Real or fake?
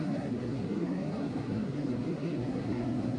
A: fake